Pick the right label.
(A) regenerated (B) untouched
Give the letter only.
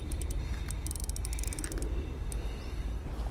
B